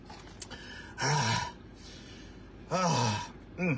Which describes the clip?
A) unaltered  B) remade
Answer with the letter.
A